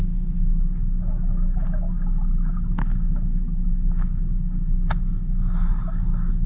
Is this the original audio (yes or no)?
yes